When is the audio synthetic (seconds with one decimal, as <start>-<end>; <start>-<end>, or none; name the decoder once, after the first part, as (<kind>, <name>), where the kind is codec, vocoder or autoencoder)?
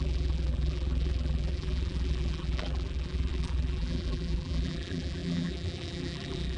0.0-6.6 (vocoder, BigVGAN v2)